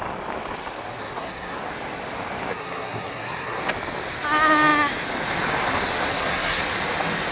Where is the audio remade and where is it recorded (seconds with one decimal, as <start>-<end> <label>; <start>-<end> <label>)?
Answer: 0.0-1.0 recorded; 1.0-1.6 remade; 1.6-2.5 recorded; 2.5-3.6 remade; 3.6-6.1 recorded; 6.1-6.6 remade; 6.6-7.3 recorded